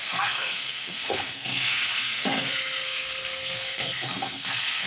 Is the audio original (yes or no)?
no